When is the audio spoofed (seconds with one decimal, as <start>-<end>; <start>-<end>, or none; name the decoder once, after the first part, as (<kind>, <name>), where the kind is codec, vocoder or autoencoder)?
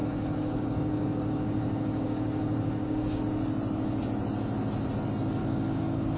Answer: 0.0-3.2 (codec, DAC); 5.4-6.2